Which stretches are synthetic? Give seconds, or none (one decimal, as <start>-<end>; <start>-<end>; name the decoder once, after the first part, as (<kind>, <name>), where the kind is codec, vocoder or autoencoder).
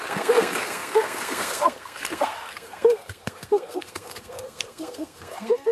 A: 0.0-5.7 (codec, SNAC)